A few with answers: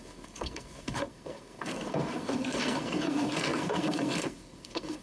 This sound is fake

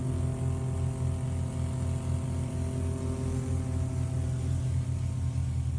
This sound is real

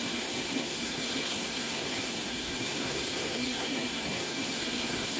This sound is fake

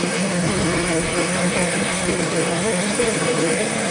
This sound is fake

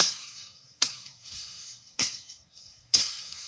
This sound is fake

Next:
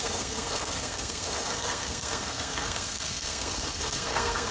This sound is fake